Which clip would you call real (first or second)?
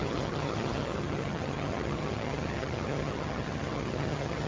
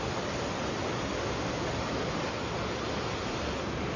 second